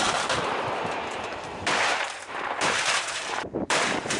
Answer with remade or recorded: remade